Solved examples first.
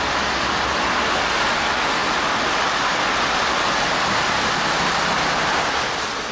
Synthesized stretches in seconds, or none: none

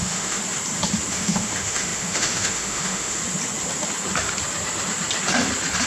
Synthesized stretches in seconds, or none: 0.0-0.4 (autoencoder, DAC-VAE); 1.1-3.2

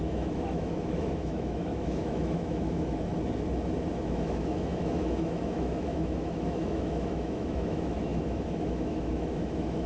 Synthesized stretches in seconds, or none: 0.0-3.1 (autoencoder, DAC-VAE); 3.9-9.9

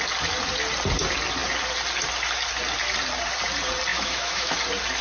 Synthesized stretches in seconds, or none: 3.9-4.6 (autoencoder, DAC-VAE)

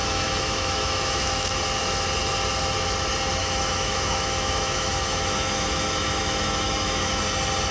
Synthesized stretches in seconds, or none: 0.0-1.6 (autoencoder, DAC-VAE); 3.4-7.2

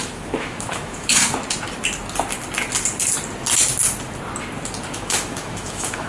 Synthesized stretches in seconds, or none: 0.0-1.2 (autoencoder, DAC-VAE); 4.9-6.1